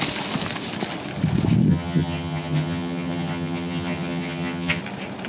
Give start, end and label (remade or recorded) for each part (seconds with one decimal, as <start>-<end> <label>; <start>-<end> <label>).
0.0-1.7 recorded; 1.7-4.8 remade; 4.8-5.3 recorded